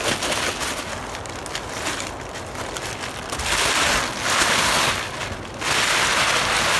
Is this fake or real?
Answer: real